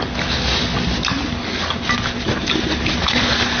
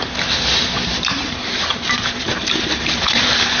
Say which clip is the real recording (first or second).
first